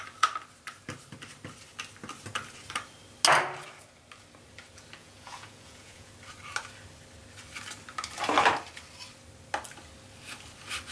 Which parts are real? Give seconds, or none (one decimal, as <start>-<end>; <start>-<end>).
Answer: 0.0-5.0; 6.1-10.9

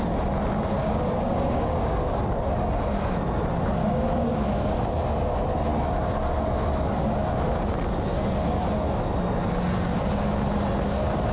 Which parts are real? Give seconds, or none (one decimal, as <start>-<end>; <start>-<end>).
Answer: 0.0-0.8; 2.2-3.8; 4.4-11.3

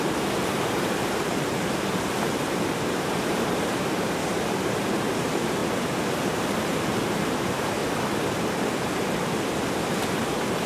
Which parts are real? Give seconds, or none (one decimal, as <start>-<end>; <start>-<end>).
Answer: 5.6-6.1; 7.8-10.1

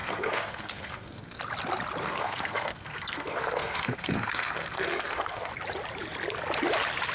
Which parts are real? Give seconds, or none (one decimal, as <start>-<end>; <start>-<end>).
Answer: 1.4-2.0; 5.5-7.1

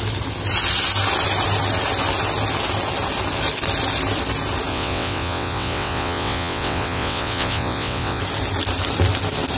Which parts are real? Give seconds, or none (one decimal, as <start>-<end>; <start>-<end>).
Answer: 0.0-4.7; 8.2-9.6

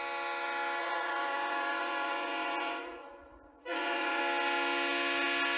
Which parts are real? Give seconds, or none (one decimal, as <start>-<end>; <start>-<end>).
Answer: 0.0-0.8; 4.2-5.6